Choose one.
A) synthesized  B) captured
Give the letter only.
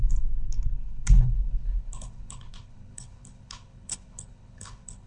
A